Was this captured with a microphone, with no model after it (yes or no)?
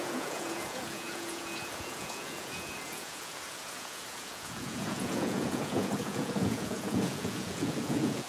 no